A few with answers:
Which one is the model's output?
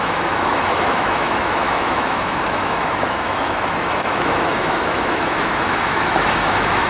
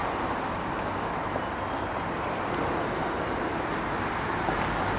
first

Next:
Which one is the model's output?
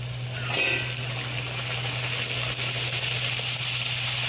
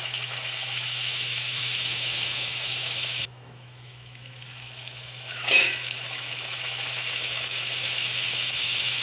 second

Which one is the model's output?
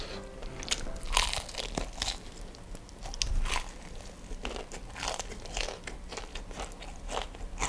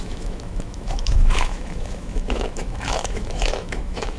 second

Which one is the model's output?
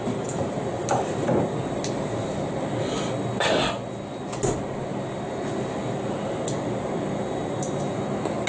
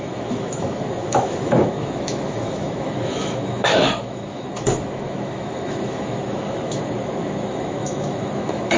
second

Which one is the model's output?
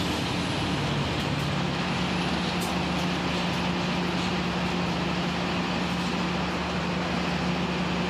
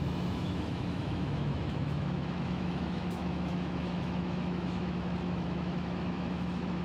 second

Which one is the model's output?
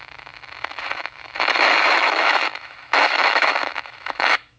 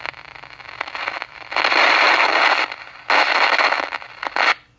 first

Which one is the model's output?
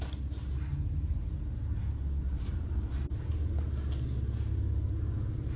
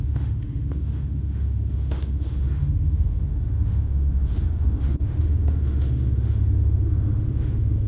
second